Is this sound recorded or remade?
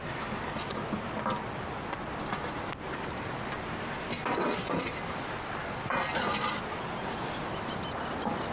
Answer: recorded